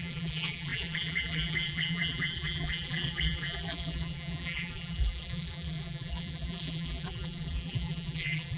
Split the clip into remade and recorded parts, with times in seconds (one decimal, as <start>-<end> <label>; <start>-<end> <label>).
0.0-8.6 remade